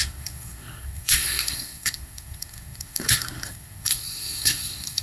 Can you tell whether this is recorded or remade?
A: remade